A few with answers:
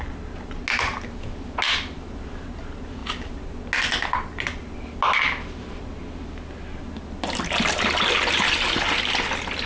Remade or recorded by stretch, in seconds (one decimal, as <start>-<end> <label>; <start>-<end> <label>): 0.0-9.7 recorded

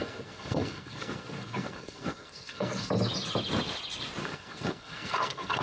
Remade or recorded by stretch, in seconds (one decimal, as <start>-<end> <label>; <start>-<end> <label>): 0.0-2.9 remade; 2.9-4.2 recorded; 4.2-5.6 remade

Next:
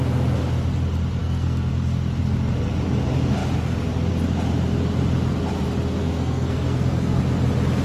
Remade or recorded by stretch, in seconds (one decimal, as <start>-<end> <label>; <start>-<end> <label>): 0.0-1.2 recorded; 1.2-1.7 remade; 1.7-6.0 recorded; 6.0-7.2 remade; 7.2-7.8 recorded

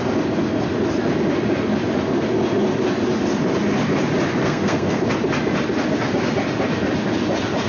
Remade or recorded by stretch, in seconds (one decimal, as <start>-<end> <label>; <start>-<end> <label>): 0.0-4.4 recorded; 4.4-5.0 remade; 5.0-7.7 recorded

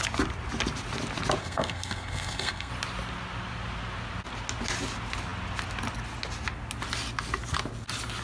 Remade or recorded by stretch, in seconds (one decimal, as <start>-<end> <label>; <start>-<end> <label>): 0.0-1.4 recorded; 1.4-2.7 remade; 2.7-8.2 recorded

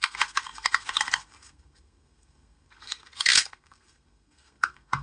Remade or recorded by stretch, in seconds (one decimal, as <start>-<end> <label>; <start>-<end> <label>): 0.0-5.0 remade

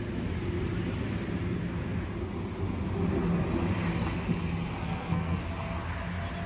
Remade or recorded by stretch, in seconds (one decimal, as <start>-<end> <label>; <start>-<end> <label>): 0.0-4.8 recorded; 4.8-5.4 remade; 5.4-6.5 recorded

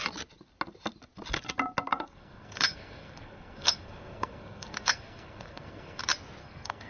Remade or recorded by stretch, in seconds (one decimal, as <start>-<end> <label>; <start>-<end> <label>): 0.0-1.9 recorded; 1.9-6.0 remade; 6.0-6.4 recorded; 6.4-6.9 remade